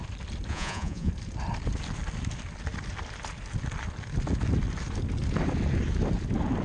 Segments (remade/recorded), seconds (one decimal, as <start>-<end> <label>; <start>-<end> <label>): 0.0-0.5 recorded; 0.5-1.1 remade; 1.1-6.6 recorded